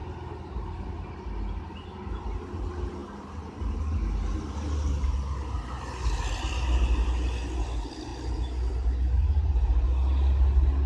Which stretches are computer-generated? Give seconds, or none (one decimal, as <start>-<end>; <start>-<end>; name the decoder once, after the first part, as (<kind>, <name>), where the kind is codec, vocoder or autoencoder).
none